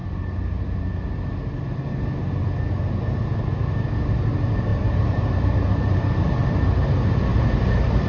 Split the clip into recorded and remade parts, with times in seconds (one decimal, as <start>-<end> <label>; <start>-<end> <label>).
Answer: 0.0-4.7 recorded; 4.7-6.3 remade; 6.3-7.3 recorded; 7.3-8.1 remade